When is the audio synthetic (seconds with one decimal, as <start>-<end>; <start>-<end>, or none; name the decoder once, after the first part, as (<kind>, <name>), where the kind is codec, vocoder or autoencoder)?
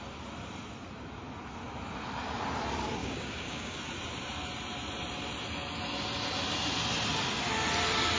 3.0-3.8 (codec, DAC)